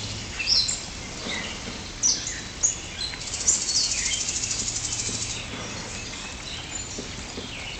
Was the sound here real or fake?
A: real